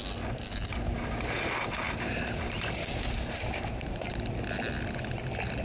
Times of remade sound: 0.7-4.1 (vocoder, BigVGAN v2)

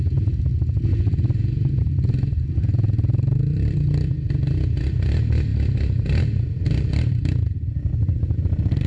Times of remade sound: none

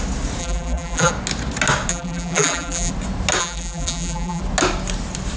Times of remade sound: 0.4-1.1 (vocoder, BigVGAN v2); 1.9-2.9; 3.4-4.4

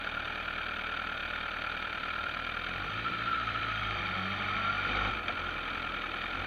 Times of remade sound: 1.2-5.1 (vocoder, BigVGAN v2)